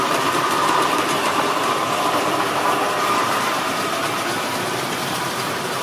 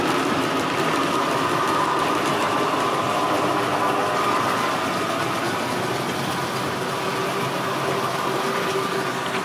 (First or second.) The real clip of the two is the second